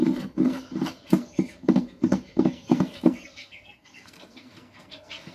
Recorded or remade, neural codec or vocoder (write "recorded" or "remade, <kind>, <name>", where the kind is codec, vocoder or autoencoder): remade, codec, SNAC